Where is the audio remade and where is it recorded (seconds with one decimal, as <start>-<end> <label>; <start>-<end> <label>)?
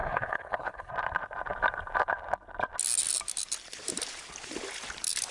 0.0-0.9 remade; 0.9-5.3 recorded